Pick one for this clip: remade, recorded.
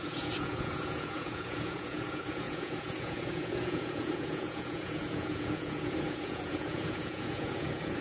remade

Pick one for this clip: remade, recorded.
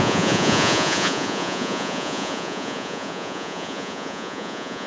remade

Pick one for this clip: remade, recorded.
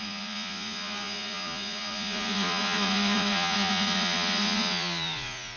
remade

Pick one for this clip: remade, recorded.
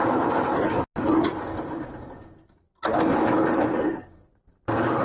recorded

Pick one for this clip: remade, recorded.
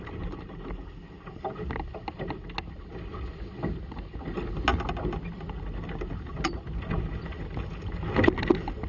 recorded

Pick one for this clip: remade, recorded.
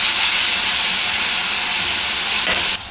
recorded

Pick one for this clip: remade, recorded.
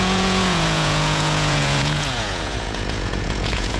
remade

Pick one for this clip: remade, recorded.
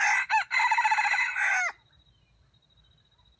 recorded